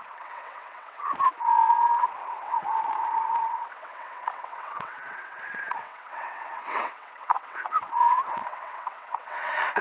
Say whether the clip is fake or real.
fake